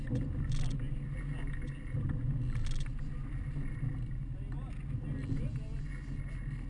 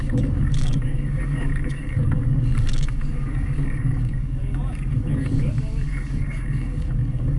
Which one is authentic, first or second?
first